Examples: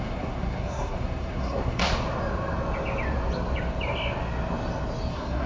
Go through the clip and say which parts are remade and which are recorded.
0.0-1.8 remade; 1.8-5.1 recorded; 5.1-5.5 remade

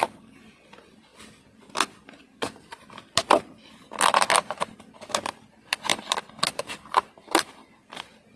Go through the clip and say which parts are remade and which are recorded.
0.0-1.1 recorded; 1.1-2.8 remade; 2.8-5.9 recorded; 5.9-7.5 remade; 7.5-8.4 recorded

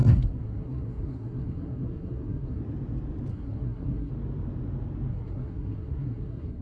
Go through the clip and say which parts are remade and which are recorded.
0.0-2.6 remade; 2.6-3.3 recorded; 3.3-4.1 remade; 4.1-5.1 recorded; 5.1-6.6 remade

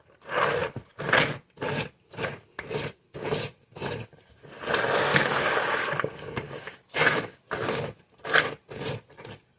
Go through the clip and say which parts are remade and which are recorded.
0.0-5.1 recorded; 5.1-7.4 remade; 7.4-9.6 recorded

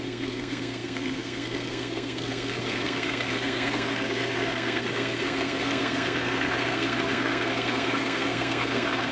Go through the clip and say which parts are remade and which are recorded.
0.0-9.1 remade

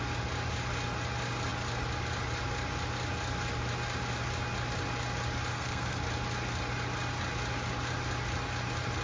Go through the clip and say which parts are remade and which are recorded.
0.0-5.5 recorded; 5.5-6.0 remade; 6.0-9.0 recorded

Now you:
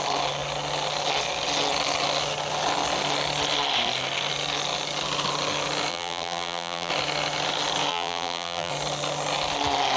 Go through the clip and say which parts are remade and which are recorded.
0.0-5.9 recorded; 5.9-6.9 remade; 6.9-7.9 recorded; 7.9-8.7 remade; 8.7-10.0 recorded